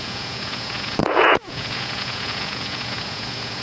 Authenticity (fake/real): fake